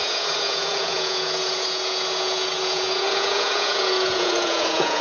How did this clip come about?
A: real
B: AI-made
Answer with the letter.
B